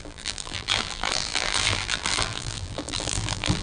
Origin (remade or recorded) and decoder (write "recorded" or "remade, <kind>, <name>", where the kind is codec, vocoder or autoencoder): remade, vocoder, BigVGAN v2